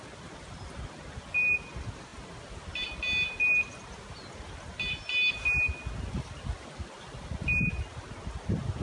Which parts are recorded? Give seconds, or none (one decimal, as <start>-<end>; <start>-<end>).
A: 0.0-8.8